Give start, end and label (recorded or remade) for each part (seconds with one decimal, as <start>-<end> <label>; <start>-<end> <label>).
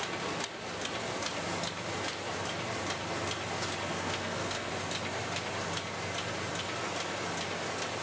0.0-3.9 recorded; 3.9-4.7 remade; 4.7-8.0 recorded